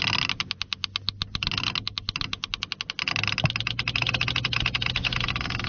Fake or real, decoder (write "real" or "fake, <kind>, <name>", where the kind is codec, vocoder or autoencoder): real